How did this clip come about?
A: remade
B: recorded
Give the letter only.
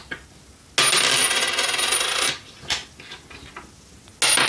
B